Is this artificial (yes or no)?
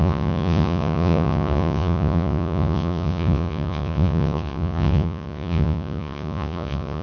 yes